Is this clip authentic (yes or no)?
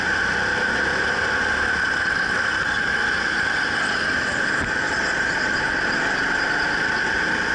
yes